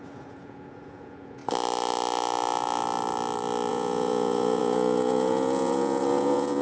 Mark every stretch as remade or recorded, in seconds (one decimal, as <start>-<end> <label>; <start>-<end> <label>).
0.0-1.4 remade; 1.4-3.7 recorded; 3.7-6.6 remade